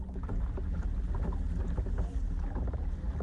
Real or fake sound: real